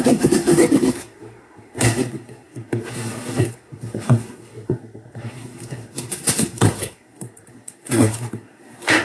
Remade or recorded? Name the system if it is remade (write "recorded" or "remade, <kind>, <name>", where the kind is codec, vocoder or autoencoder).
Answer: remade, codec, SNAC